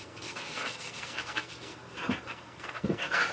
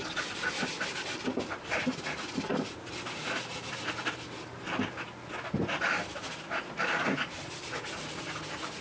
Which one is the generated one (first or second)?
first